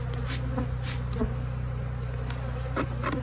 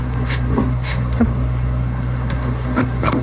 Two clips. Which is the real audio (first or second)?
first